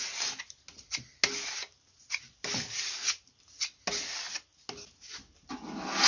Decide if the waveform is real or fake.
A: real